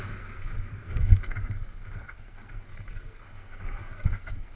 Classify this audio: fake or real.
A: fake